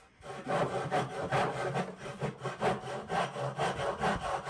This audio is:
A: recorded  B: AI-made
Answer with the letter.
A